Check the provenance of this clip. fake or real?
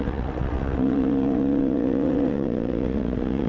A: fake